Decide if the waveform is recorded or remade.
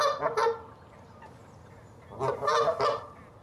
recorded